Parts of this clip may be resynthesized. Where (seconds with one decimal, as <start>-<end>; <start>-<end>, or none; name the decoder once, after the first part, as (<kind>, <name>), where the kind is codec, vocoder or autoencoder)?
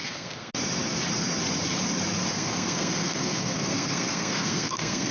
0.0-0.5 (codec, SNAC); 2.3-5.1